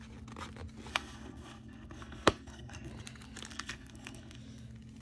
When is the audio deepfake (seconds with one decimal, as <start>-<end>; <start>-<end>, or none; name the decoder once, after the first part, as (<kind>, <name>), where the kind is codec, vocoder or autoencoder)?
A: 0.9-2.9 (codec, SNAC); 3.5-4.4

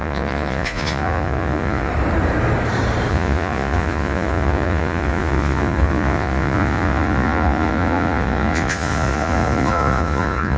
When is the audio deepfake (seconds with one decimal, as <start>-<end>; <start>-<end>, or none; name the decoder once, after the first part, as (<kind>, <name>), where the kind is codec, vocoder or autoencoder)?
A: 0.0-1.9 (vocoder, Vocos); 3.1-10.6

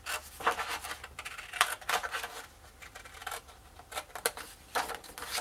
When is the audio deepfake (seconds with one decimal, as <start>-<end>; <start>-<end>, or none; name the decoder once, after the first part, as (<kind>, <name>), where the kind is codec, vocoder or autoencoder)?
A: none

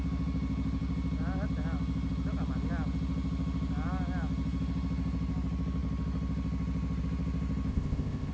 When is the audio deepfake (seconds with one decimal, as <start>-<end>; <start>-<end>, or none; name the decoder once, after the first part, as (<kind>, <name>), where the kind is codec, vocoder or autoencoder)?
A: 7.7-8.3 (codec, ZipCodec)

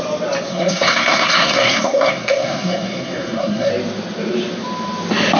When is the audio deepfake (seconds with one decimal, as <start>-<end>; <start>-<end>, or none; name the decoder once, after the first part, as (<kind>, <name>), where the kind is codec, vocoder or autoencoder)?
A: 0.5-3.7 (codec, SNAC)

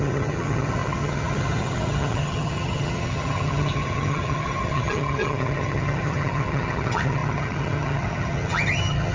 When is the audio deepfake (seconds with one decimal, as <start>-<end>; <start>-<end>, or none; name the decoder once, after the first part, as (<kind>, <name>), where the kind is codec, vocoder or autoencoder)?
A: 0.0-9.1 (vocoder, HiFi-GAN)